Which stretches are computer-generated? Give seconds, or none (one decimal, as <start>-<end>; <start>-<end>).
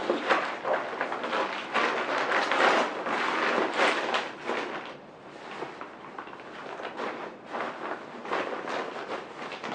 none